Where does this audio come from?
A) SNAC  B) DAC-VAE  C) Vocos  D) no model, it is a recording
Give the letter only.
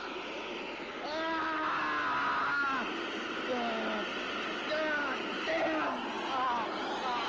D